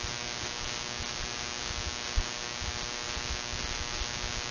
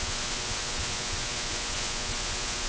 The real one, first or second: first